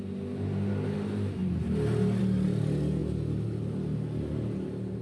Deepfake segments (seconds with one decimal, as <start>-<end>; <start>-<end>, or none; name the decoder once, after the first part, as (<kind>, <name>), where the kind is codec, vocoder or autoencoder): none